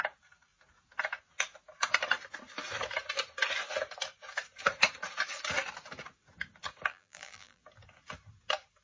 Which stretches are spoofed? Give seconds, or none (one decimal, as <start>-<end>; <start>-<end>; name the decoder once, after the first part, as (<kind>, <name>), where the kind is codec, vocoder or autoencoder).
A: 6.9-7.6 (vocoder, BigVGAN v2)